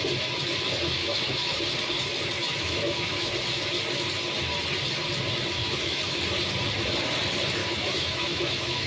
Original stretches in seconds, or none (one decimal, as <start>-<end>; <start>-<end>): 0.0-1.0; 1.6-2.4; 3.3-5.6; 6.2-7.6